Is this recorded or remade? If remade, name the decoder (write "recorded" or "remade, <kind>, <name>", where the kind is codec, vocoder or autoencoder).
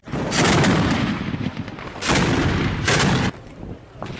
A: remade, vocoder, BigVGAN v2